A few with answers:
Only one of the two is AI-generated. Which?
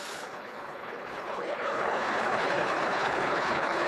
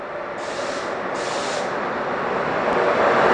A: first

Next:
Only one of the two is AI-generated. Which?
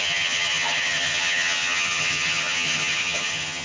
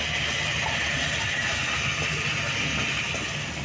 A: first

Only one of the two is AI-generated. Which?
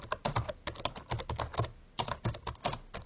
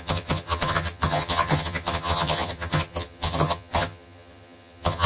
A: second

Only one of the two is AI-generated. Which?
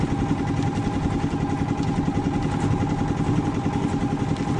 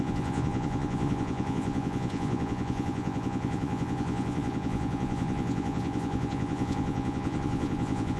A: second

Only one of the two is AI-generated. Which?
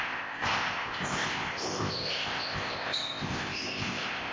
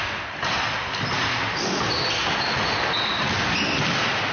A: first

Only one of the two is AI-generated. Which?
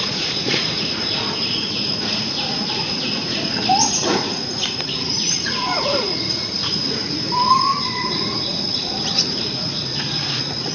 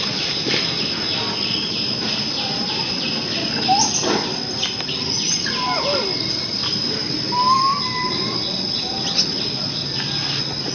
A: first